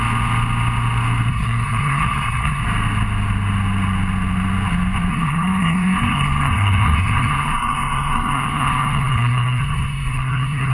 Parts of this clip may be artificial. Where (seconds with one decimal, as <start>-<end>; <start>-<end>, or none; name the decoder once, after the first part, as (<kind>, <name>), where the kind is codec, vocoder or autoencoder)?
1.3-2.6 (codec, SNAC); 5.1-10.7